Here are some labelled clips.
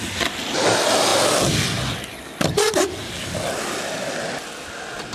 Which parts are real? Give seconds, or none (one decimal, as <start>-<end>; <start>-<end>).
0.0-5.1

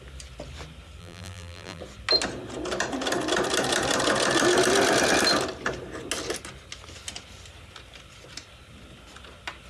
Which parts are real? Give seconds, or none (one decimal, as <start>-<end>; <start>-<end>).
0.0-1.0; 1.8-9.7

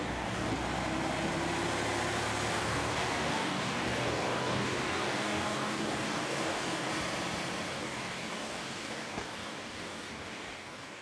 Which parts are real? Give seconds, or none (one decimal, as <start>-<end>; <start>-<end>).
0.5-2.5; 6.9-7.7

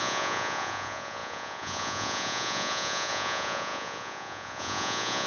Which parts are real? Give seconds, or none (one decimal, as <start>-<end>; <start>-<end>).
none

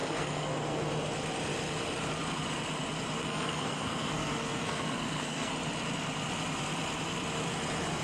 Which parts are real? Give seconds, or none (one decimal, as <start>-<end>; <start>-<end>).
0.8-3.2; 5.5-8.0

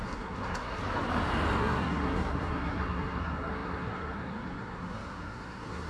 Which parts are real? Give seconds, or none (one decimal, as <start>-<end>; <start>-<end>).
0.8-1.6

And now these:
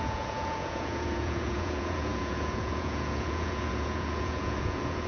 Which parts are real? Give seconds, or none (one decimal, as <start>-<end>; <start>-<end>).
none

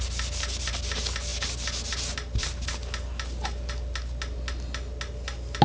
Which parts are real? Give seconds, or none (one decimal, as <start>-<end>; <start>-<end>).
0.0-5.6